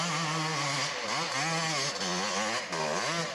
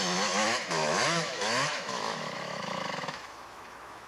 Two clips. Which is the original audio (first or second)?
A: first